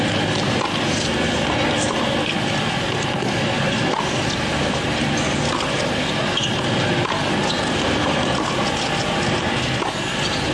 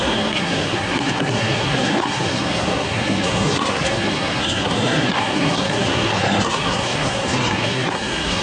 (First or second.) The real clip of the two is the first